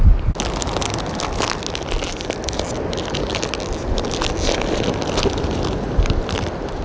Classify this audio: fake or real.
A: real